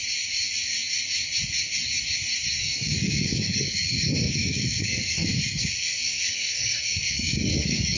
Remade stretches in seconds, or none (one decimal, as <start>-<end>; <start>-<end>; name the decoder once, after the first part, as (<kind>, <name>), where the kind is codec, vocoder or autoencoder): 2.6-8.0 (codec, SNAC)